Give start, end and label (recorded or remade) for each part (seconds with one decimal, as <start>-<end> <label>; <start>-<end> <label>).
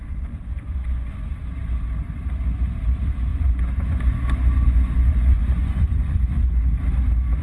0.0-1.3 remade; 1.3-3.3 recorded; 3.3-6.6 remade; 6.6-7.4 recorded